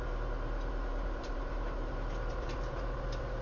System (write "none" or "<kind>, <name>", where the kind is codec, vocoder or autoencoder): vocoder, BigVGAN v2